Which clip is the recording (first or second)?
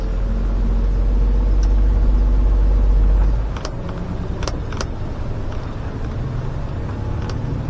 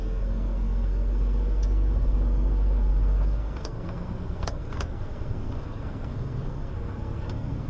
first